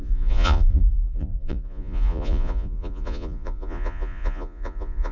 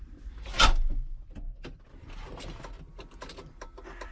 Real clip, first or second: second